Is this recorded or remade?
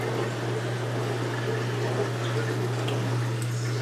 recorded